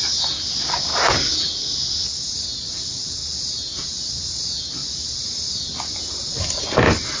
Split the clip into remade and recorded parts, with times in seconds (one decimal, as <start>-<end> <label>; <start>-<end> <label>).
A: 0.0-7.2 recorded